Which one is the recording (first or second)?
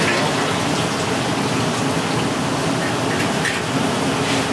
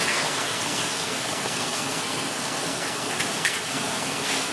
first